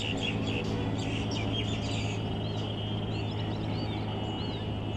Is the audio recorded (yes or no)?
yes